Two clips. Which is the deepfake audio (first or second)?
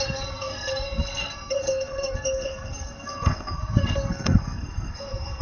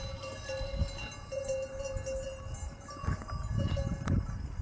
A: first